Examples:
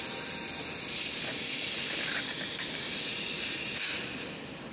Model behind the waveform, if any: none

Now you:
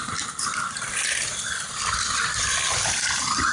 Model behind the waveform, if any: none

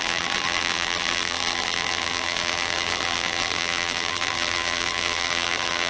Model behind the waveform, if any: vocoder, BigVGAN v2